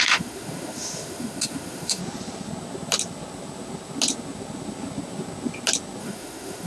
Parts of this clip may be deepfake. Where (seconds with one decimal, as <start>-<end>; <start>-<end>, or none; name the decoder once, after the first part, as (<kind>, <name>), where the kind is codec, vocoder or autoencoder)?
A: 0.0-2.0 (autoencoder, DAC-VAE); 6.0-6.7